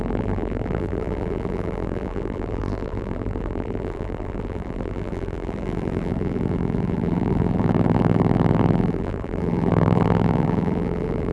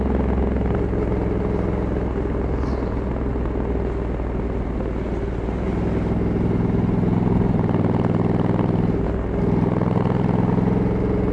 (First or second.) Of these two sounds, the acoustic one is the second